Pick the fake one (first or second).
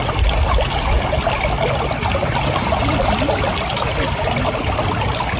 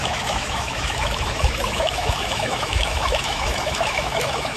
second